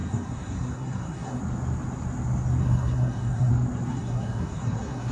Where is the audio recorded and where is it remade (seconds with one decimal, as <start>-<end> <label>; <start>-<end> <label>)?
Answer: 0.0-1.4 remade; 1.4-2.6 recorded; 2.6-3.5 remade; 3.5-3.9 recorded; 3.9-5.1 remade